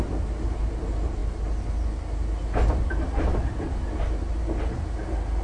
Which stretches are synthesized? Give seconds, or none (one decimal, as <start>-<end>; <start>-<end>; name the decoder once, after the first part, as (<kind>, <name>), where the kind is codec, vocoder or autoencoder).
none